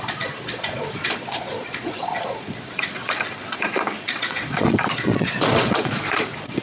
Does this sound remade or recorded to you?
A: remade